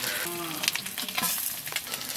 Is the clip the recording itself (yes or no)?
yes